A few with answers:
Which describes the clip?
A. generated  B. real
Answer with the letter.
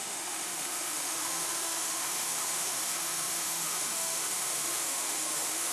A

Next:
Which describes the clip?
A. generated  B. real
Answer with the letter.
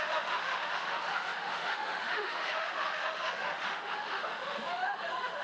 A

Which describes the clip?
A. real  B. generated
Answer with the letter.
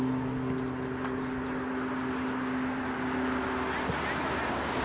A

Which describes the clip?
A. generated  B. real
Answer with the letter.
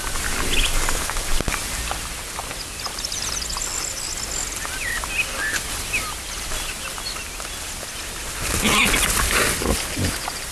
B